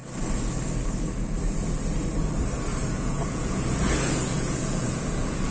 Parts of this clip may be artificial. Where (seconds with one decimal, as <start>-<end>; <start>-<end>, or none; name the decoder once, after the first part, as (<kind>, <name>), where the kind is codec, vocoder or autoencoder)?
2.8-5.5 (vocoder, Vocos)